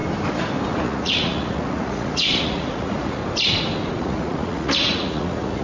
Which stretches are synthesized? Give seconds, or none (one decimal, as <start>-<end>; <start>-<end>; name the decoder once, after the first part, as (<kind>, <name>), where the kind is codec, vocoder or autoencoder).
0.7-3.2 (vocoder, Vocos); 4.0-5.6